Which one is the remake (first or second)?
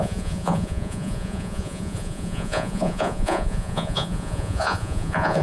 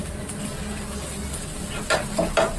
first